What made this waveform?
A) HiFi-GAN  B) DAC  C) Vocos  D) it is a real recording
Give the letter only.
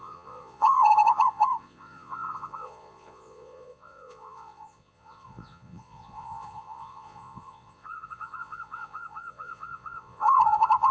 C